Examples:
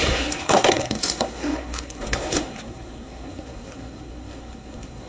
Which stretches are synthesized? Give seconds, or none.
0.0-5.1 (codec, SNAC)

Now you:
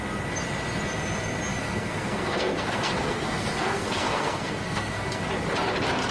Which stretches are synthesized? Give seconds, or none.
1.5-5.2 (codec, SNAC)

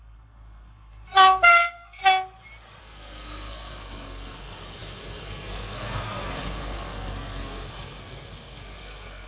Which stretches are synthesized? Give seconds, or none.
0.0-2.0 (codec, SNAC); 2.8-9.3